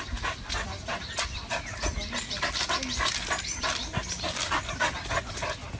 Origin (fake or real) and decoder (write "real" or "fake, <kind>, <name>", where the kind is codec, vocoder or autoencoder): real